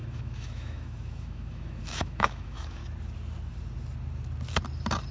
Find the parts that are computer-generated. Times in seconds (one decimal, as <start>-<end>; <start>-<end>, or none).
0.0-2.8